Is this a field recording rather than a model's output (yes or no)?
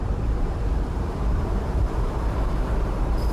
no